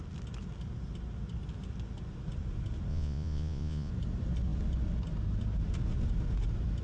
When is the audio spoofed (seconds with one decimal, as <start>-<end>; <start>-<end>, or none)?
2.9-3.9